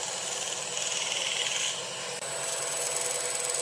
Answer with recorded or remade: recorded